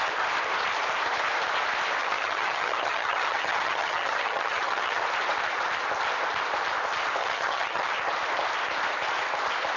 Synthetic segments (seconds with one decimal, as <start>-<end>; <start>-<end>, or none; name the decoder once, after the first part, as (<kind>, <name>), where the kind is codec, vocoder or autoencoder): 2.0-5.0 (vocoder, HiFi-GAN); 7.2-7.9